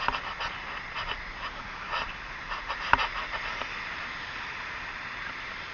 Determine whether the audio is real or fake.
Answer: real